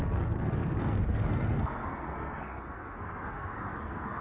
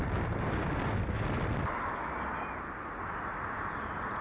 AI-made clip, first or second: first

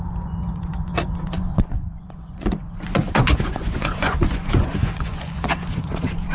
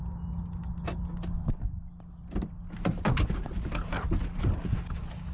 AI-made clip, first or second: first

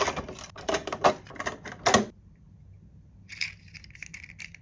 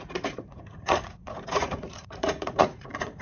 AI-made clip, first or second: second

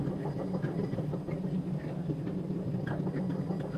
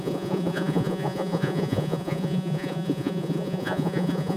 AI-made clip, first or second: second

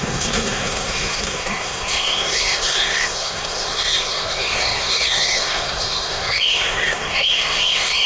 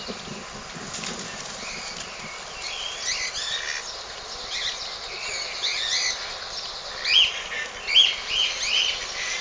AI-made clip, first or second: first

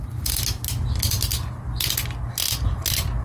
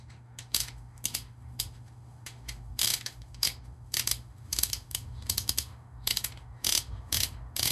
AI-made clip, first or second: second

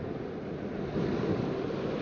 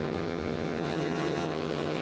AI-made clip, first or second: second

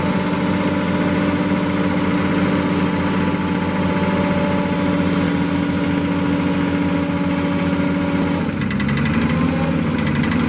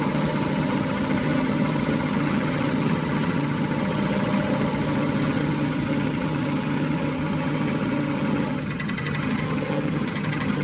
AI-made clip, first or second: second